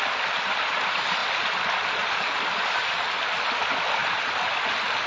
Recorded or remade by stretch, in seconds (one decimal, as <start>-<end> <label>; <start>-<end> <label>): 0.0-5.1 recorded